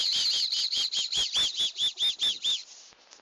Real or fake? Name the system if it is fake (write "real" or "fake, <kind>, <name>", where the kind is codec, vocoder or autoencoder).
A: real